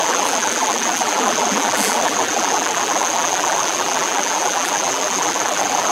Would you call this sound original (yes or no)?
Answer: no